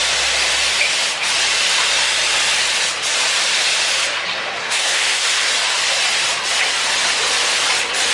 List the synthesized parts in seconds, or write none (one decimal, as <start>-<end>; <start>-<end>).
4.6-5.5